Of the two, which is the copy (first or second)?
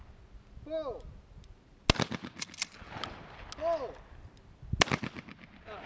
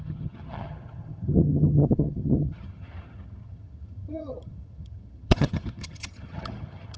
second